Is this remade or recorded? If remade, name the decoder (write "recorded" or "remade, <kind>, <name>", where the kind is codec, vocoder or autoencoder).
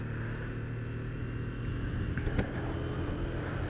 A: recorded